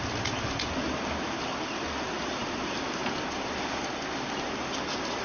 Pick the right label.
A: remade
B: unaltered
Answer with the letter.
B